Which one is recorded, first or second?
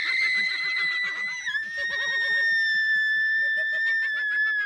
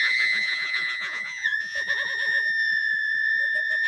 first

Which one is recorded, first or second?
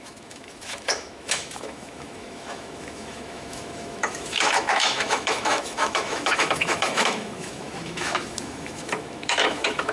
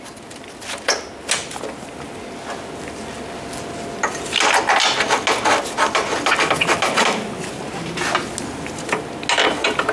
second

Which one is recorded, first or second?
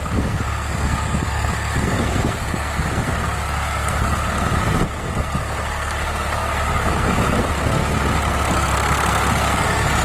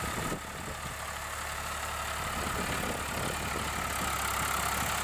second